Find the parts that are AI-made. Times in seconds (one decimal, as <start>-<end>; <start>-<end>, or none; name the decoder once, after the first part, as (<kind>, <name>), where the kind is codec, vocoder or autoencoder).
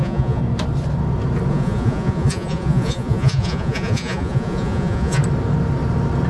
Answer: 0.0-0.4 (vocoder, Vocos); 1.5-5.2